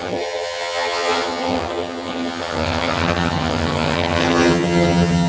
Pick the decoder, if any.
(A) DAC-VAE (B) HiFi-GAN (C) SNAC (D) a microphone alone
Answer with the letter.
B